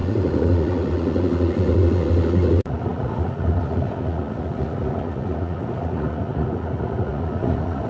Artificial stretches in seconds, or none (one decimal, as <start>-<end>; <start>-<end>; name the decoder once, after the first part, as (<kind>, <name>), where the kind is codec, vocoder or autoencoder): 0.0-7.9 (vocoder, Vocos)